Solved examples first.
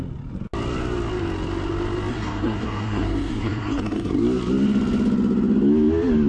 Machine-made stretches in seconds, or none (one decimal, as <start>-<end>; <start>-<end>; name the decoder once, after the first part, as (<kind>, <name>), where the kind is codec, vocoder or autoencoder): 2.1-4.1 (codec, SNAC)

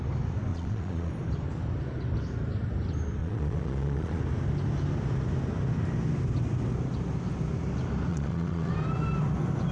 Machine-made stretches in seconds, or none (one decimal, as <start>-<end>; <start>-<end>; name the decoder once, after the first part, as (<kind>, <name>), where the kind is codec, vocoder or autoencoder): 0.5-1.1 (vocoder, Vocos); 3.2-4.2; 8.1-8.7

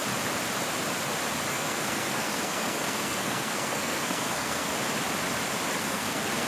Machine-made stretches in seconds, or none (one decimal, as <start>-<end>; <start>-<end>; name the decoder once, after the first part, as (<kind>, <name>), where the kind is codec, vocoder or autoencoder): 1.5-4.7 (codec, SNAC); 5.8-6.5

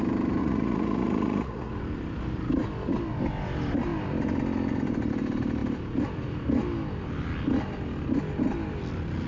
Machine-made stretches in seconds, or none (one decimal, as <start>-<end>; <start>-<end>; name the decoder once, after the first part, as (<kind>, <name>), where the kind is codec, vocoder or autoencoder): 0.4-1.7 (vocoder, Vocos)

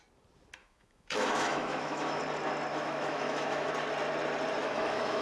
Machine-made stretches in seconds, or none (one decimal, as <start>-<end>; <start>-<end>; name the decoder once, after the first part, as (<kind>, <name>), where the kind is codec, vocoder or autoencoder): 0.6-2.2 (autoencoder, DAC-VAE); 2.7-3.7; 4.6-5.2

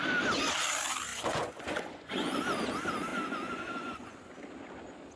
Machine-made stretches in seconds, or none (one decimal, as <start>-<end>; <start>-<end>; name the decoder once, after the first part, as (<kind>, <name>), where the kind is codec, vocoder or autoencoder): 1.1-2.4 (vocoder, Vocos); 3.1-4.3

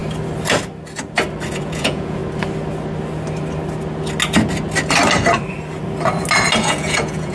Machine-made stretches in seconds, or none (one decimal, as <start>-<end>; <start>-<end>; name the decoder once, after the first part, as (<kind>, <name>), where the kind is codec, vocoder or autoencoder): 1.5-2.2 (vocoder, Vocos); 6.6-7.3